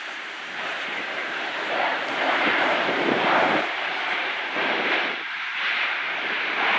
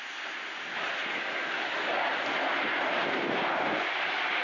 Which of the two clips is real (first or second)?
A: second